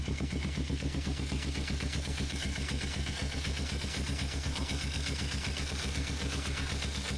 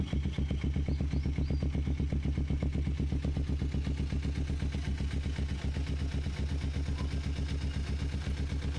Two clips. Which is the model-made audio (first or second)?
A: first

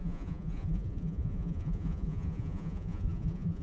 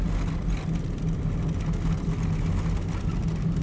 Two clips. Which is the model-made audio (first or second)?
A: first